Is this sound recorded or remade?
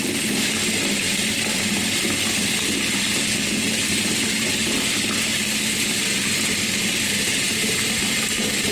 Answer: remade